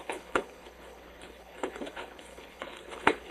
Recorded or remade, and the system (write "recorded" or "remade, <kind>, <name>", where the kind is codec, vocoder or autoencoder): remade, codec, HILCodec